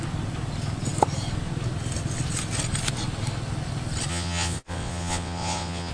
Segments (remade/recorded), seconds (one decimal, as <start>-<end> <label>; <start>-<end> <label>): 0.0-4.1 recorded; 4.1-5.9 remade